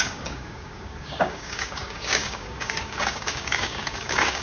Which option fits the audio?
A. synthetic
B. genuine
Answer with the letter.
A